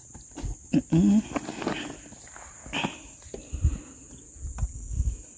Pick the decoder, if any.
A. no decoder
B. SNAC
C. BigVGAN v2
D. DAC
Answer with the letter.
A